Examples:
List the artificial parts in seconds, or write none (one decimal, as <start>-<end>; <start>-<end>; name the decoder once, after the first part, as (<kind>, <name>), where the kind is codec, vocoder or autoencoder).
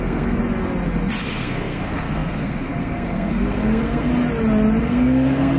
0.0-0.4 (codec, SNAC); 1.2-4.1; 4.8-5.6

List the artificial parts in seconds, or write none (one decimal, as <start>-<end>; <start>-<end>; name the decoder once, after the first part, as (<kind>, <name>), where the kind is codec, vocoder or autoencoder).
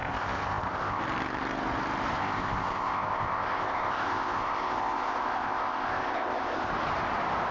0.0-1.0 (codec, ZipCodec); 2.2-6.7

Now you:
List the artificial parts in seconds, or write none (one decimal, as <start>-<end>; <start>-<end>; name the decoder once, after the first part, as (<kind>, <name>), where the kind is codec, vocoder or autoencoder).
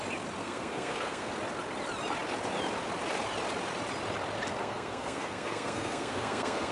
0.4-1.3 (codec, SNAC); 4.6-6.7